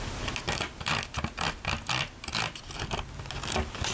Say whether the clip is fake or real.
real